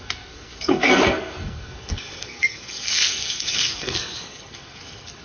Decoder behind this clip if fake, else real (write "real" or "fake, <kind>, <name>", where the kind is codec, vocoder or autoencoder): fake, codec, SNAC